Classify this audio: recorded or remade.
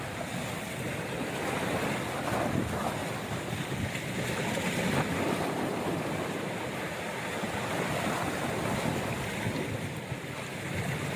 recorded